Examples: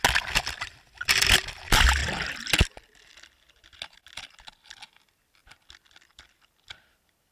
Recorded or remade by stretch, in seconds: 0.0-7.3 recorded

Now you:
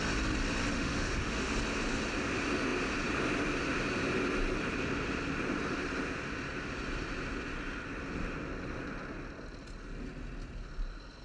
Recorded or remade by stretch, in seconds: 0.0-0.7 recorded; 0.7-1.5 remade; 1.5-11.2 recorded

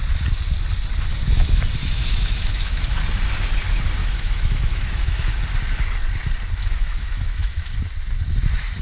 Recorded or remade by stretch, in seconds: 0.0-1.8 recorded; 1.8-2.8 remade; 2.8-4.0 recorded; 4.0-5.3 remade; 5.3-6.6 recorded; 6.6-7.8 remade; 7.8-8.8 recorded

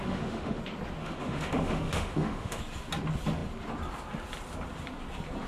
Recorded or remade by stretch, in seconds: 0.0-0.6 remade; 0.6-1.0 recorded; 1.0-2.6 remade; 2.6-5.5 recorded

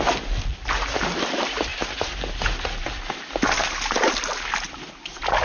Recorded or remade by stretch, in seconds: 0.0-5.4 recorded

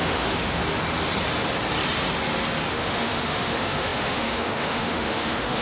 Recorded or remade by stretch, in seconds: 0.0-0.6 remade; 0.6-2.7 recorded; 2.7-5.6 remade

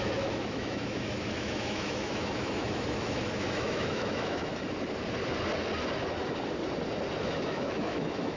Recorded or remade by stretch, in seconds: 0.0-4.5 remade; 4.5-7.2 recorded; 7.2-8.4 remade

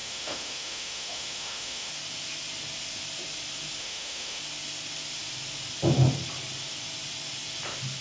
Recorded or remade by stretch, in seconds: 0.0-1.9 remade; 1.9-3.8 recorded; 3.8-4.4 remade; 4.4-8.0 recorded